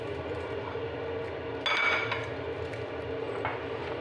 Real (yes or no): yes